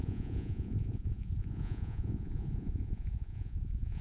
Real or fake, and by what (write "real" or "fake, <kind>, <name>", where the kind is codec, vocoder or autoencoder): fake, vocoder, Vocos